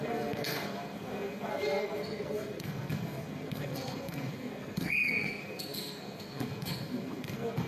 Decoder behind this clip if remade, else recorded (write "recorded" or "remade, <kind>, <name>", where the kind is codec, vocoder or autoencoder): remade, codec, SNAC